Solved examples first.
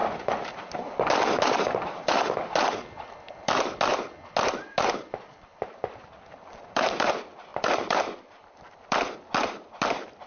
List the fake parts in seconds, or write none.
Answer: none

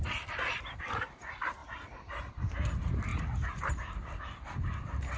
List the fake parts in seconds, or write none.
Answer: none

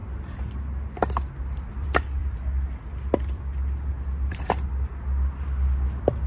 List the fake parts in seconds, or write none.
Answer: 1.7-2.2 (vocoder, BigVGAN v2)

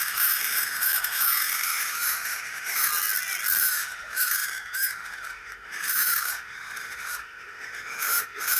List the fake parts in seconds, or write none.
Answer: 0.0-2.9 (autoencoder, DAC-VAE); 3.6-8.6

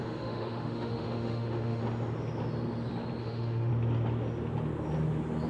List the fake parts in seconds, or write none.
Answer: 0.0-1.8 (autoencoder, DAC-VAE); 3.2-3.7